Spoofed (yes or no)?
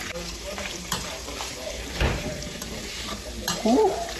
yes